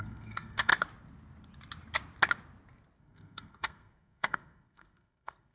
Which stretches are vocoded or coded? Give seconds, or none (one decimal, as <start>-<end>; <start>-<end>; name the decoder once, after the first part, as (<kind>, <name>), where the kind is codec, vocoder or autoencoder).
0.0-0.7 (codec, SNAC); 3.0-5.5